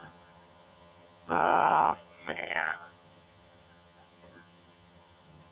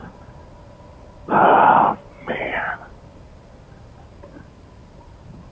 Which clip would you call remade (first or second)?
first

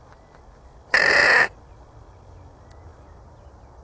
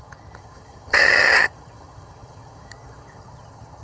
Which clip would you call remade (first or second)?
second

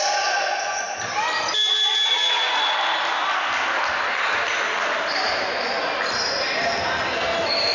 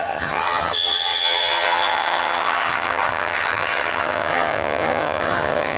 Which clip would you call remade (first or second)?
second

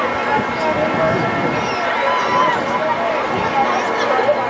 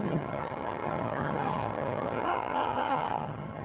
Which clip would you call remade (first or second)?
second